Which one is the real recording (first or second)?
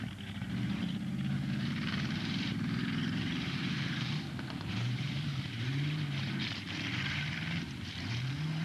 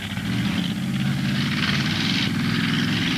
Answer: second